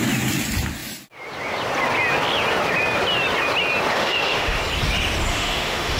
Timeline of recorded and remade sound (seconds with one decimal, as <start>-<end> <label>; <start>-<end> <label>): 0.0-3.9 recorded; 3.9-4.6 remade; 4.6-5.3 recorded; 5.3-6.0 remade